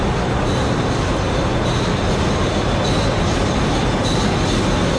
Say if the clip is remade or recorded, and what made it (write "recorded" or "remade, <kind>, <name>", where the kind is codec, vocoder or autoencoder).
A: remade, vocoder, BigVGAN v2